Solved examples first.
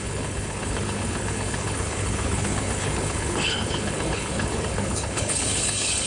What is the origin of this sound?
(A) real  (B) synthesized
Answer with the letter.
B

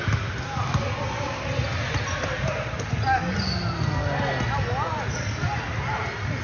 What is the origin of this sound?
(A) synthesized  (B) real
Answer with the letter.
B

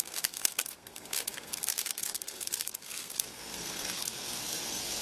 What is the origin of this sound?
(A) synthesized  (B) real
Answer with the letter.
A